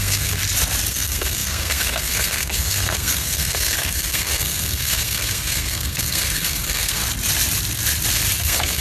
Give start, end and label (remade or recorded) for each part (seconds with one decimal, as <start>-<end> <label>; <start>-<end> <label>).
0.0-0.4 remade; 0.4-0.9 recorded; 0.9-7.0 remade; 7.0-8.4 recorded; 8.4-8.8 remade